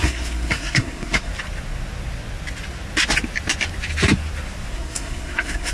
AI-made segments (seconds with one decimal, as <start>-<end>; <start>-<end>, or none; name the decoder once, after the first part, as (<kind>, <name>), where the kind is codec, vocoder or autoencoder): 0.0-1.3 (codec, SNAC); 4.7-5.7